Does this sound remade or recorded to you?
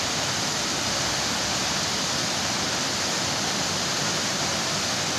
recorded